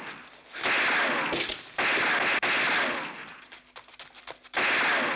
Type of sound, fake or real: real